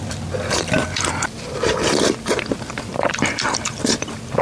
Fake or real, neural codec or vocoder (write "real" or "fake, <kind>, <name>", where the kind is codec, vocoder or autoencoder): fake, vocoder, BigVGAN v2